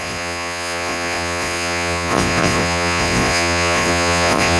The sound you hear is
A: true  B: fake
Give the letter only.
B